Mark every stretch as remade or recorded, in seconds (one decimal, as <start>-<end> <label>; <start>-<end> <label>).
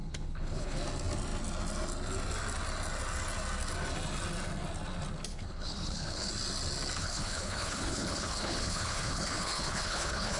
0.0-0.8 remade; 0.8-5.3 recorded; 5.3-6.3 remade; 6.3-7.0 recorded; 7.0-10.4 remade